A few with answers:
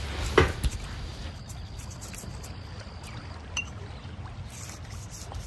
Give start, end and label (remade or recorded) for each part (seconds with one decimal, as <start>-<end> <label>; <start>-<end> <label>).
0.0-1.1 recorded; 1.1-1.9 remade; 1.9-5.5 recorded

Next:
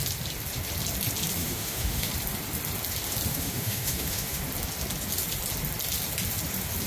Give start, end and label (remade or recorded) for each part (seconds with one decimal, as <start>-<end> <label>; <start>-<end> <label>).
0.0-1.4 recorded; 1.4-2.1 remade; 2.1-3.3 recorded; 3.3-4.4 remade; 4.4-6.9 recorded

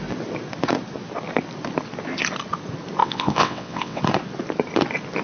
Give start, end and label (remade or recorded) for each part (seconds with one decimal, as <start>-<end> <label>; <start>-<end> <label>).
0.0-3.0 recorded; 3.0-4.0 remade; 4.0-5.2 recorded

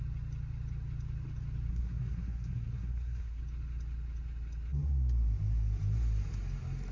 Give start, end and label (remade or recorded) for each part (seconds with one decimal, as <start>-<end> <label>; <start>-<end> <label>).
0.0-1.7 recorded; 1.7-3.4 remade; 3.4-6.9 recorded

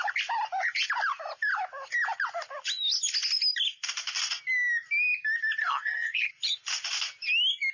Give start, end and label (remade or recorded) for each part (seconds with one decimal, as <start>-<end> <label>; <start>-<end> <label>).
0.0-5.6 recorded; 5.6-6.3 remade; 6.3-7.7 recorded